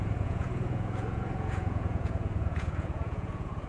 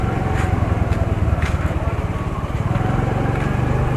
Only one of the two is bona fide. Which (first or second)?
second